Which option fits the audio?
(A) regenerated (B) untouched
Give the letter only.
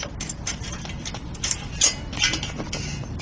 B